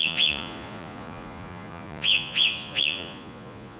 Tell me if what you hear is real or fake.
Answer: fake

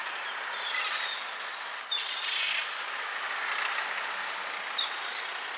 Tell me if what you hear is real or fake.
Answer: real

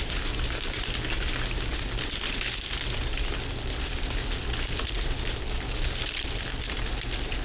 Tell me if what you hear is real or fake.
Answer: real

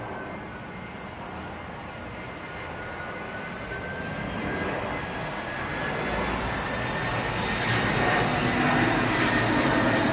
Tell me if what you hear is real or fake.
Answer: real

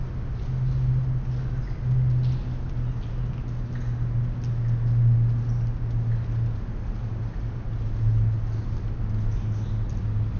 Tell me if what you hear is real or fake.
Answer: real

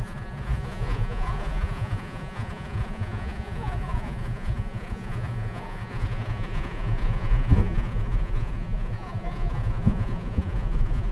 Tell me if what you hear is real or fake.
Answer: fake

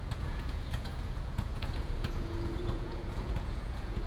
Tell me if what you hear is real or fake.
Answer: fake